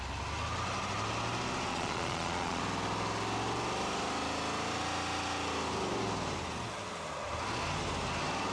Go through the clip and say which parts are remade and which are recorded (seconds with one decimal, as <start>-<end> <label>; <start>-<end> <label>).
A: 0.0-1.7 recorded; 1.7-2.6 remade; 2.6-8.5 recorded